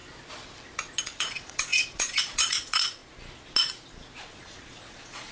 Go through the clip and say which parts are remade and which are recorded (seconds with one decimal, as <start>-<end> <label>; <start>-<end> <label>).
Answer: 0.0-1.0 recorded; 1.0-3.0 remade; 3.0-4.2 recorded; 4.2-5.3 remade